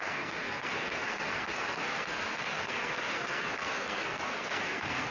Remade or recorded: remade